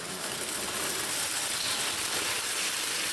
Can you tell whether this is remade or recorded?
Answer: recorded